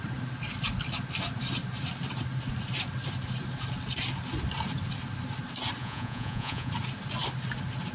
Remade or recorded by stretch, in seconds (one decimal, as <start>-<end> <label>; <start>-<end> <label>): 0.0-5.8 recorded; 5.8-6.7 remade; 6.7-7.9 recorded